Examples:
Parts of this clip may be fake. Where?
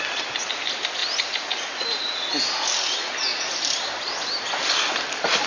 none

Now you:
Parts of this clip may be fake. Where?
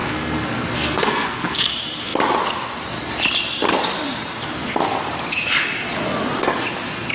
0.0-1.7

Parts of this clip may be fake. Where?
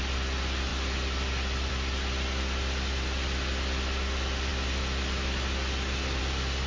none